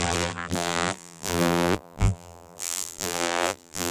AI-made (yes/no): yes